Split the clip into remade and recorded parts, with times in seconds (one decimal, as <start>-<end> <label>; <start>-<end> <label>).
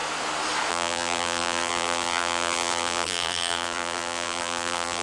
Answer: 0.0-0.7 recorded; 0.7-5.0 remade